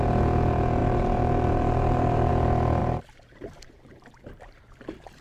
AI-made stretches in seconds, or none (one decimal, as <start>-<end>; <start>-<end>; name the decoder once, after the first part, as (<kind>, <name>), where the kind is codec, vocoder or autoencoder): 0.8-2.3 (vocoder, BigVGAN v2); 2.8-5.2